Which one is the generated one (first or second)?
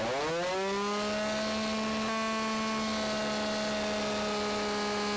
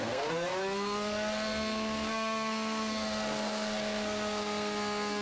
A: second